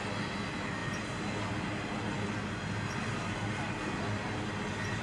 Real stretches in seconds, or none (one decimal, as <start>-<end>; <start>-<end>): 0.0-5.0